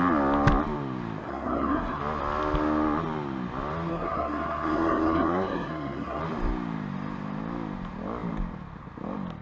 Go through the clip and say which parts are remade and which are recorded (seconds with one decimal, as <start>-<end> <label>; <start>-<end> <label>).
0.0-1.2 recorded; 1.2-2.0 remade; 2.0-3.9 recorded; 3.9-6.2 remade; 6.2-9.4 recorded